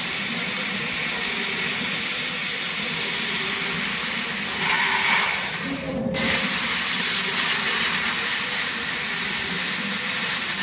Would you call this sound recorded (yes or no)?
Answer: no